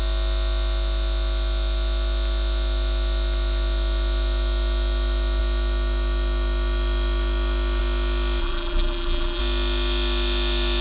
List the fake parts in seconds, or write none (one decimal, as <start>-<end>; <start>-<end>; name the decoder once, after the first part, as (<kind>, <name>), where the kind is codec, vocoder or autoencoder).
8.4-9.4 (vocoder, BigVGAN v2)

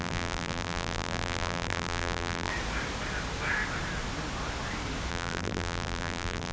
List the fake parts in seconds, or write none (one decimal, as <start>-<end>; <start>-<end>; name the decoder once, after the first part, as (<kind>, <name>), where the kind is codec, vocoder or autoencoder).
0.0-2.5 (vocoder, BigVGAN v2); 5.1-6.5

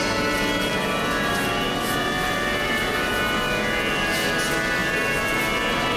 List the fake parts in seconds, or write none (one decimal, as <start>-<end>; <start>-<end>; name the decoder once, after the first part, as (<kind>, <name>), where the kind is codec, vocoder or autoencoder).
none

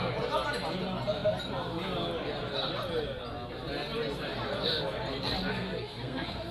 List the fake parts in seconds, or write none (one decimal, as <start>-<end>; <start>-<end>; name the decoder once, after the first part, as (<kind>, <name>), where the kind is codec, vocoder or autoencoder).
5.5-6.5 (codec, SNAC)

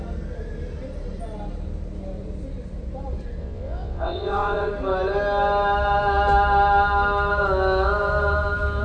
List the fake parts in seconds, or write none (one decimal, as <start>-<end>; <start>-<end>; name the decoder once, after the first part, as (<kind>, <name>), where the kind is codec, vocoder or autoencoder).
3.4-4.7 (vocoder, WaveNeXt)

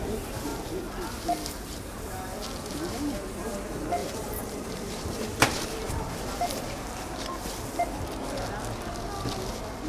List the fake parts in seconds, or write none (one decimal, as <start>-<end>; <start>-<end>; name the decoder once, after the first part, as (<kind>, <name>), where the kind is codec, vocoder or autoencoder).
4.0-7.7 (vocoder, BigVGAN v2)

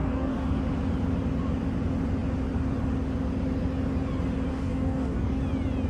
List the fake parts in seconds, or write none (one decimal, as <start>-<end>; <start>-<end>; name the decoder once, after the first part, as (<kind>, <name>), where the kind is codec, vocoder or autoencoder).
0.0-0.6 (codec, DAC); 4.5-5.4